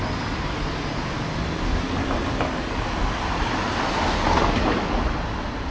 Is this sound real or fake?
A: real